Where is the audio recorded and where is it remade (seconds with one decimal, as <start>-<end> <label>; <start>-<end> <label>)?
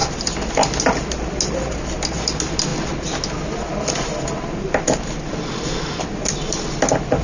0.0-7.2 recorded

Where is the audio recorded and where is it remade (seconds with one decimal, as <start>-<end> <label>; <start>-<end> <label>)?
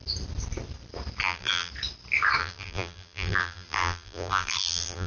0.0-1.2 recorded; 1.2-1.7 remade; 1.7-2.4 recorded; 2.4-5.1 remade